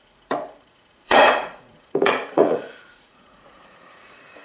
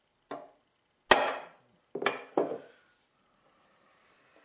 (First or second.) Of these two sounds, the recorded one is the second